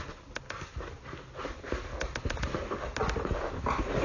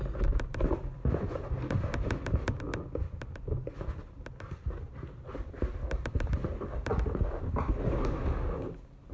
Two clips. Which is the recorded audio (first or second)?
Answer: first